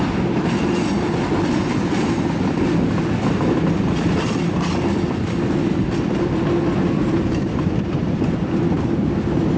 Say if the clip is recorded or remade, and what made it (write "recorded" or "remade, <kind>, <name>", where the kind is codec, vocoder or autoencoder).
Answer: recorded